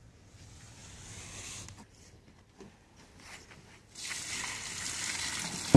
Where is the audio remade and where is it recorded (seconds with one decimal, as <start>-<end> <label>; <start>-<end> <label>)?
0.0-5.8 recorded